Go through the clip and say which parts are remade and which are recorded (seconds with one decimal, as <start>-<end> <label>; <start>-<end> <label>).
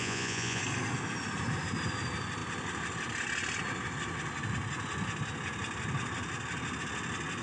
0.0-0.6 remade; 0.6-7.4 recorded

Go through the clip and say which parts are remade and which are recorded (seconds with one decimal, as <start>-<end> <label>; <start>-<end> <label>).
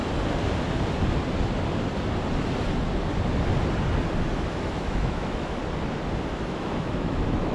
0.0-4.5 recorded; 4.5-5.6 remade; 5.6-6.3 recorded; 6.3-7.5 remade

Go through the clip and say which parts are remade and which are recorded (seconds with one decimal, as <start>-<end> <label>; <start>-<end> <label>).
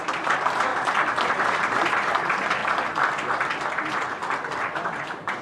0.0-0.7 remade; 0.7-1.3 recorded; 1.3-2.6 remade; 2.6-4.6 recorded; 4.6-5.4 remade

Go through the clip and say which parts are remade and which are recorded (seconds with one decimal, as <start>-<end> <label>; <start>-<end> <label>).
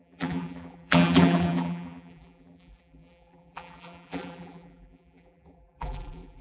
0.0-6.4 remade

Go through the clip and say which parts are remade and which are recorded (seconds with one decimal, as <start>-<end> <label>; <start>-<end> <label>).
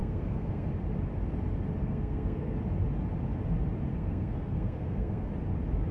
0.0-0.7 remade; 0.7-1.8 recorded; 1.8-2.5 remade; 2.5-3.9 recorded; 3.9-5.3 remade; 5.3-5.9 recorded